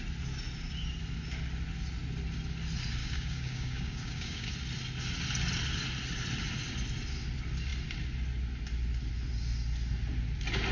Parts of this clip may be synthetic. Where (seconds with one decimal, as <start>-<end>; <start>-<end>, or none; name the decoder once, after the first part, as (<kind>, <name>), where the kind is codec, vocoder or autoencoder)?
3.0-4.5 (codec, DAC)